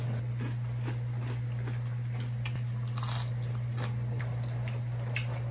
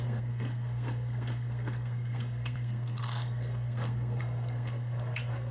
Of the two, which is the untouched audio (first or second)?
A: first